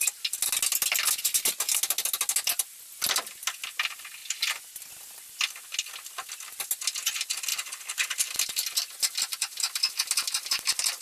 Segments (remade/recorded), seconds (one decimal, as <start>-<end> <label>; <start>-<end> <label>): 0.0-11.0 recorded